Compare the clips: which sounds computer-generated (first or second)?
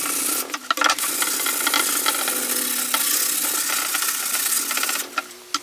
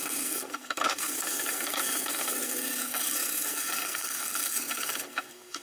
second